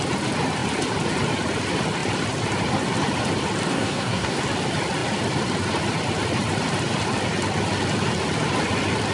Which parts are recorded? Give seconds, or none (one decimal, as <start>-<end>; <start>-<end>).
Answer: 0.0-3.7; 4.4-9.1